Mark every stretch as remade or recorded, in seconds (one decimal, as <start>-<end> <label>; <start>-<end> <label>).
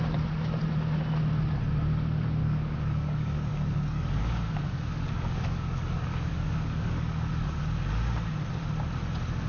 0.0-2.4 recorded; 2.4-7.6 remade; 7.6-9.5 recorded